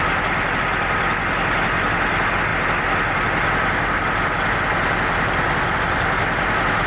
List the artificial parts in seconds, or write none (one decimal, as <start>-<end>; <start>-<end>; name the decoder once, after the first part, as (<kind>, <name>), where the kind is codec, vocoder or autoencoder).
none